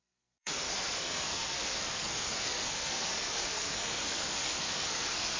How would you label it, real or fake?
fake